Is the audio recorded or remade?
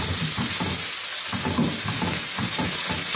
recorded